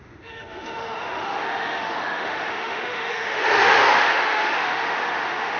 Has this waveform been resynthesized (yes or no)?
yes